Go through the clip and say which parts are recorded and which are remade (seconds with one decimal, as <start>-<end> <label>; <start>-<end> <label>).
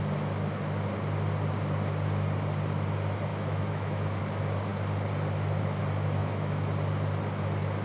0.0-3.3 recorded; 3.3-4.2 remade; 4.2-6.2 recorded; 6.2-6.7 remade; 6.7-7.8 recorded